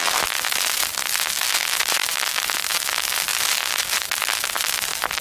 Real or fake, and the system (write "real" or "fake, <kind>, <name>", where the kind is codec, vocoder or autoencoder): real